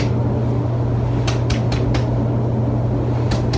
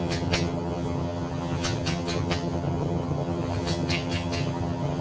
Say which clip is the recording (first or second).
first